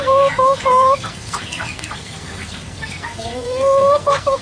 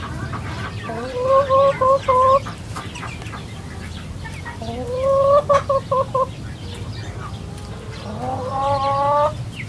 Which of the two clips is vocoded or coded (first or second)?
first